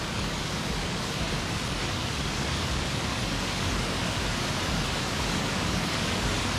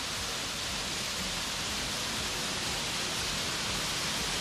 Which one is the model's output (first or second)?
first